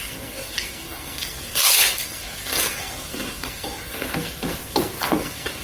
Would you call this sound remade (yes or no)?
yes